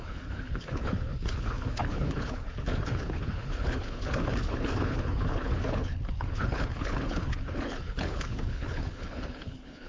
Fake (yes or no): yes